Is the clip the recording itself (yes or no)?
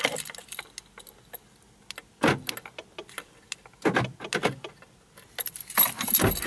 yes